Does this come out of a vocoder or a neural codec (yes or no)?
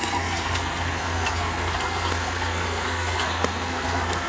yes